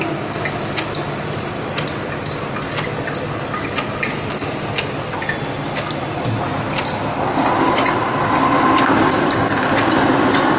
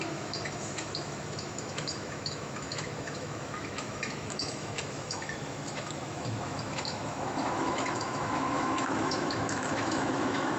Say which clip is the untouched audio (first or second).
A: first